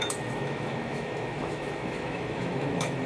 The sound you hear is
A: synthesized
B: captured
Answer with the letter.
A